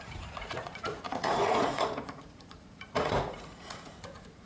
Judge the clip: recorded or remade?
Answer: remade